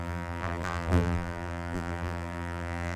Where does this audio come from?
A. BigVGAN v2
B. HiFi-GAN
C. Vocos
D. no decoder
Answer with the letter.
A